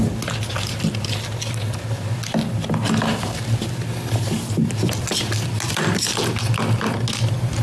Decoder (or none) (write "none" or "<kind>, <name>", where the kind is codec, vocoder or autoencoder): none